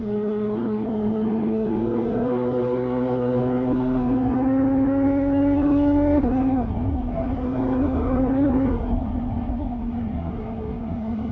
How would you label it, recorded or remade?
remade